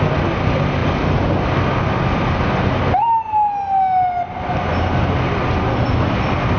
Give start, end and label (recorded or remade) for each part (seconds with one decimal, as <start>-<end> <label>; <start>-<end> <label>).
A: 0.0-6.6 recorded